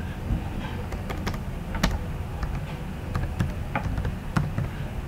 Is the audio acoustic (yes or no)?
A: yes